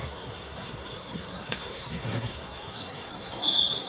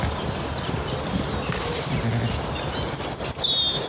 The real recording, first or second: second